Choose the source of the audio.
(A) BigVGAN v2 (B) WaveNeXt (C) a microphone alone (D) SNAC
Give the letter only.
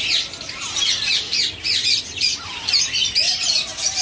C